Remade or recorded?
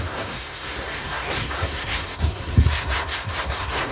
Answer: remade